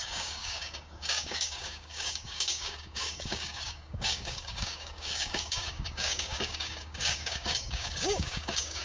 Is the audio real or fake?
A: fake